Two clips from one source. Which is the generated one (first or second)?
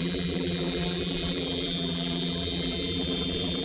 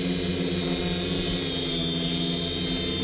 first